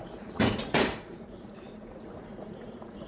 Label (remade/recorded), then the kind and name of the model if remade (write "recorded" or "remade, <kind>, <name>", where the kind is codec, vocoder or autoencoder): remade, vocoder, Vocos